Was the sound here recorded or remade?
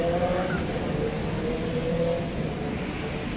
recorded